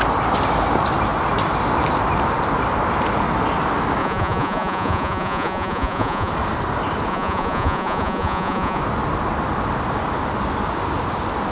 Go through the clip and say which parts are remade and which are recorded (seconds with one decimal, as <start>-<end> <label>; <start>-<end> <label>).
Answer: 0.0-4.0 recorded; 4.0-6.3 remade; 6.3-7.1 recorded; 7.1-8.8 remade; 8.8-11.5 recorded